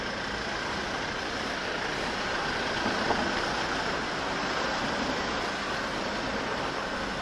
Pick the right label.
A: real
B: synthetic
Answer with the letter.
A